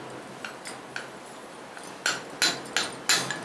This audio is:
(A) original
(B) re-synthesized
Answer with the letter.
A